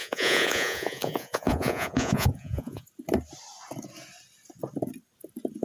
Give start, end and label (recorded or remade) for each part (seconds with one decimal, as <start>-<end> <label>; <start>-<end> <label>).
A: 0.0-2.9 remade; 2.9-5.6 recorded